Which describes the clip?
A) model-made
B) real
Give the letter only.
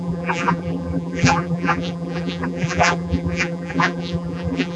A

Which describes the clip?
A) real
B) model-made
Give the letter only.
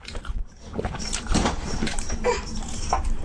B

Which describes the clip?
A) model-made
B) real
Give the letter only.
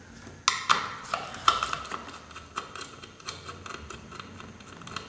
B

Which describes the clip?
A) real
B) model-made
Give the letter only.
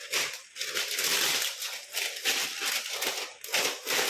A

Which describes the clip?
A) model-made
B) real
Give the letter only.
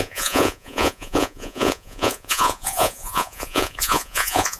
A